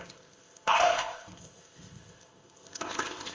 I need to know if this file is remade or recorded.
remade